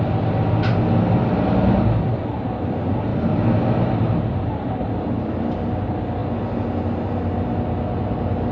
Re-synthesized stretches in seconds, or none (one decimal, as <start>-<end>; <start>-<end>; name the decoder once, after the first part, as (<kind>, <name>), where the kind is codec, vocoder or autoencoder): none